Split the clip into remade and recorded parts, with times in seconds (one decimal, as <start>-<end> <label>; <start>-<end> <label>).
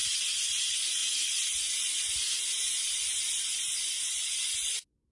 0.0-5.1 recorded